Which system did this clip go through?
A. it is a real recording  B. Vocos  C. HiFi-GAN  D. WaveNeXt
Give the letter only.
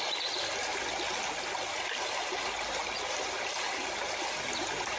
A